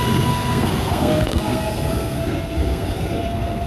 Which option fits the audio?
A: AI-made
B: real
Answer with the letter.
A